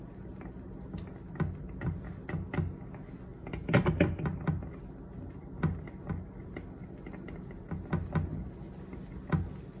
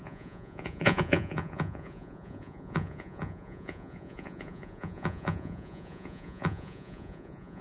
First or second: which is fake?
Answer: second